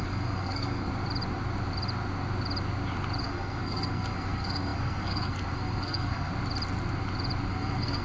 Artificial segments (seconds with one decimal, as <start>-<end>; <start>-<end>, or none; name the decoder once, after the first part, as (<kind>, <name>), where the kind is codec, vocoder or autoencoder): 0.0-0.9 (codec, SNAC); 3.2-6.3; 7.5-8.0